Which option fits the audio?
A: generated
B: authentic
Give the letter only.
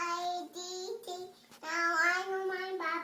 B